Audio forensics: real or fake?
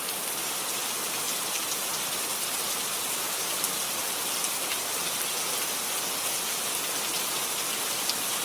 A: fake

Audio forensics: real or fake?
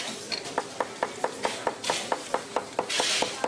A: real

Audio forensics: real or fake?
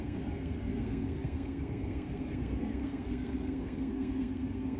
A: fake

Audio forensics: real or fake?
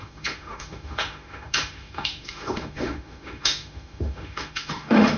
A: fake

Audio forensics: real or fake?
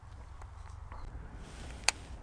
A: real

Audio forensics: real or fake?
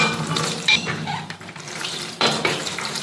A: fake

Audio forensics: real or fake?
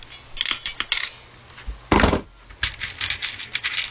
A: real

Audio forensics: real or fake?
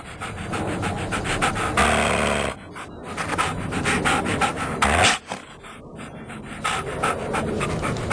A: real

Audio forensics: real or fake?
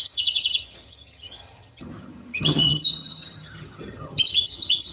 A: fake